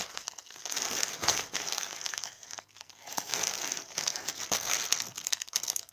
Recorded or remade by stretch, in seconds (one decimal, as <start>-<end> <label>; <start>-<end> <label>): 0.0-5.9 remade